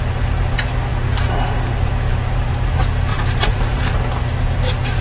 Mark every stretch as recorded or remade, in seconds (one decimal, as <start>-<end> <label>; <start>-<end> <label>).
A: 0.0-3.1 recorded; 3.1-3.8 remade; 3.8-5.0 recorded